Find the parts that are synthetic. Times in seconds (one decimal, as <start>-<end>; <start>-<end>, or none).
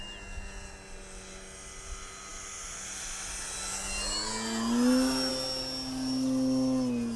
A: none